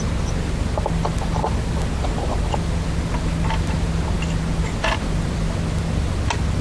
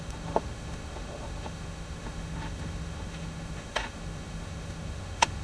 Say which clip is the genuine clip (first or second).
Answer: first